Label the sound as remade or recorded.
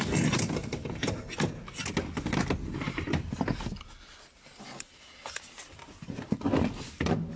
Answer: recorded